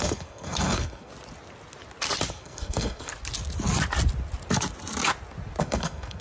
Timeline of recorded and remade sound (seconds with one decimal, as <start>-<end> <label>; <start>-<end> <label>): 0.0-1.1 remade; 1.1-2.3 recorded; 2.3-3.1 remade; 3.1-5.6 recorded; 5.6-6.2 remade